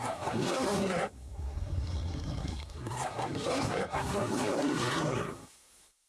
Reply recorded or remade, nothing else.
remade